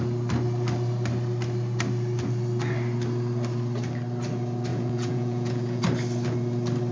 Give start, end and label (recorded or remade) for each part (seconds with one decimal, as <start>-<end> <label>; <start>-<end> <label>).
0.0-4.7 recorded; 4.7-5.8 remade; 5.8-6.9 recorded